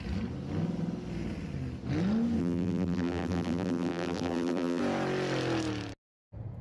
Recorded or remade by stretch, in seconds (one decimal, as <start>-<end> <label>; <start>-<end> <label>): 0.0-2.4 recorded; 2.4-4.8 remade; 4.8-6.6 recorded

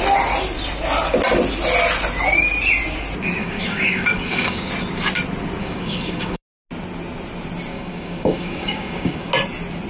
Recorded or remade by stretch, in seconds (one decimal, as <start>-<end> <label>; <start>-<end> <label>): 0.0-3.4 recorded; 3.4-4.7 remade; 4.7-5.6 recorded; 5.6-6.4 remade; 6.4-7.7 recorded; 7.7-9.3 remade; 9.3-9.9 recorded

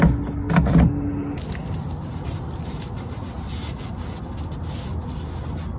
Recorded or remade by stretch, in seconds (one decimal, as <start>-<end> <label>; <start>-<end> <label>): 0.0-5.8 recorded

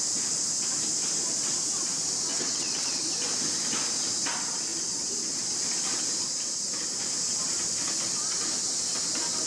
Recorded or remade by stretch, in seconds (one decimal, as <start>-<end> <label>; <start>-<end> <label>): 0.0-2.3 recorded; 2.3-3.0 remade; 3.0-9.5 recorded

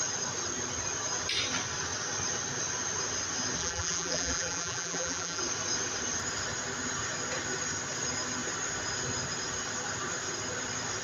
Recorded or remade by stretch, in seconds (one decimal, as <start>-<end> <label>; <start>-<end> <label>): 0.0-3.6 recorded; 3.6-5.4 remade; 5.4-11.0 recorded